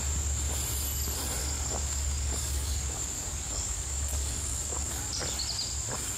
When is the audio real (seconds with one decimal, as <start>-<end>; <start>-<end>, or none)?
0.0-1.4; 5.1-6.2